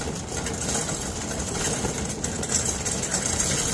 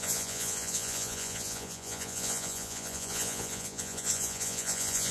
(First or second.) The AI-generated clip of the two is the second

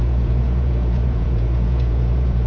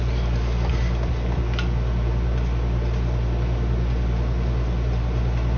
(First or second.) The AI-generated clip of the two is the first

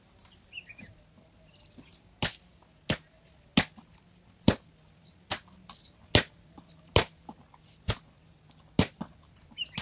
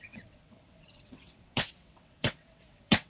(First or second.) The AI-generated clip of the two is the second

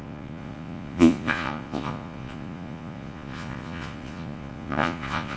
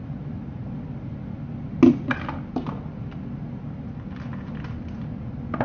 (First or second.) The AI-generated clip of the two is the first